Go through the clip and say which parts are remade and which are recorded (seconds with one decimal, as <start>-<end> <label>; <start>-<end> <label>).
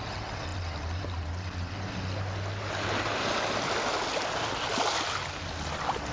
0.0-6.1 recorded